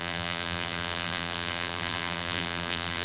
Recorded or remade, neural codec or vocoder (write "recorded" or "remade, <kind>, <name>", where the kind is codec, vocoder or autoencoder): remade, vocoder, BigVGAN v2